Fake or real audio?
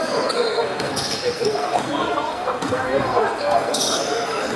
fake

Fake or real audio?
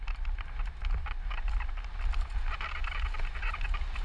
real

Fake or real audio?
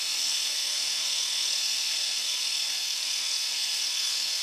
fake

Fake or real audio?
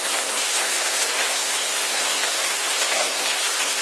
fake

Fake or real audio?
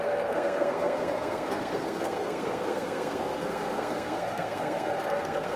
fake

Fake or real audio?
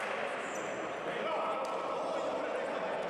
real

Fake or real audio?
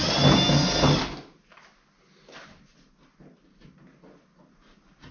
real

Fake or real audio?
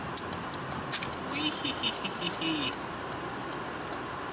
real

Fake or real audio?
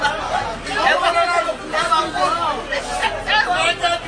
real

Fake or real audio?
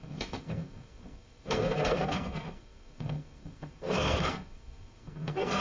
fake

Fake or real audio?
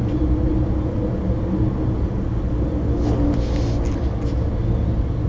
real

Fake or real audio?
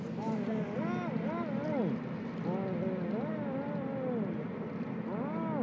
real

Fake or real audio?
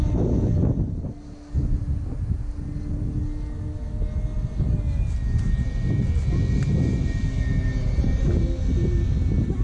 real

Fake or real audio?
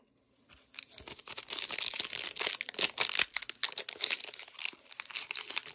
real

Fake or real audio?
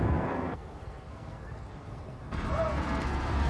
fake